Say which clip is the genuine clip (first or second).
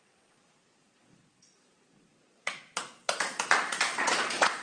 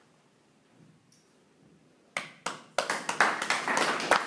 second